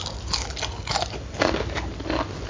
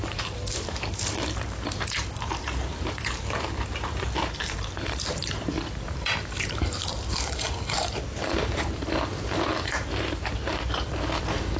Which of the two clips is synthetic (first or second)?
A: second